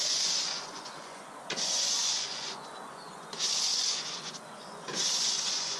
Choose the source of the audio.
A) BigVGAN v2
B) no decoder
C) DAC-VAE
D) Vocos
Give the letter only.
D